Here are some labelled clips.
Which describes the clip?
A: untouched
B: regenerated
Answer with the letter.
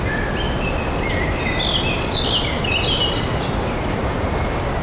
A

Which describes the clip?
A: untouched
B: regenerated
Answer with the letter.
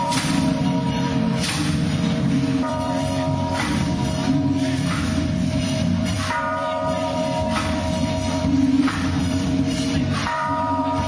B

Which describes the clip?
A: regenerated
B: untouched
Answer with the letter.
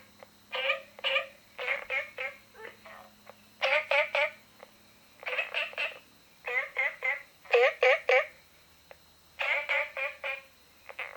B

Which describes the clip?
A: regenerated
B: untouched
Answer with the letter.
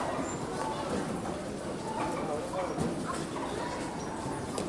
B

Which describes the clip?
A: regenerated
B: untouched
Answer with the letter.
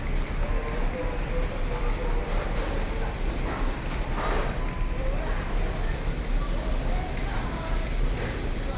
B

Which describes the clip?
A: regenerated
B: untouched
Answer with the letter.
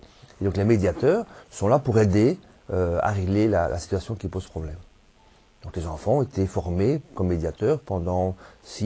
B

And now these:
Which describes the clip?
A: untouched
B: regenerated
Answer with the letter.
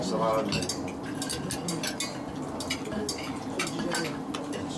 A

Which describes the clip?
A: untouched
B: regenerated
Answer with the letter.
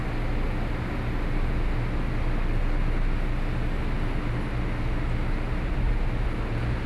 A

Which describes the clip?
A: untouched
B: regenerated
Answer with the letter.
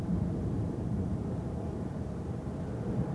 B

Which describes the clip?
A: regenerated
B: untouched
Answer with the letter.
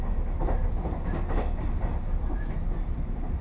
B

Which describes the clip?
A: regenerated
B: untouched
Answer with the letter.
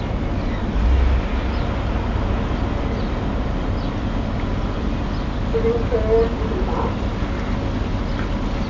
B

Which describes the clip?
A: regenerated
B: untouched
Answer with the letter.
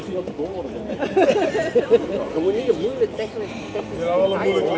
B